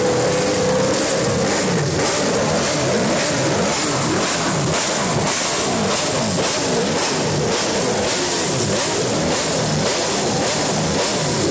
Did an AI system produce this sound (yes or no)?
no